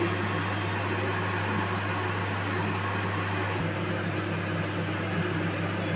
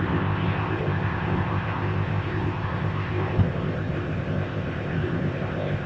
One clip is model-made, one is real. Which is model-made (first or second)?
second